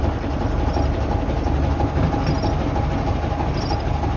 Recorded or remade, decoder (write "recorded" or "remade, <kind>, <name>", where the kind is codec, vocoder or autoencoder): recorded